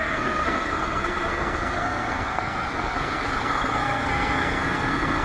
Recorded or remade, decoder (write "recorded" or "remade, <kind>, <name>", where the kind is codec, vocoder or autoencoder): remade, codec, SNAC